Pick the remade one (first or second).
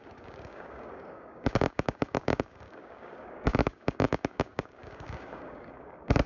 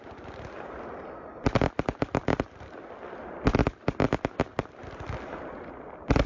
first